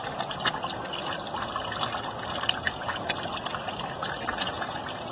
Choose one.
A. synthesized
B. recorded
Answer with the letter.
B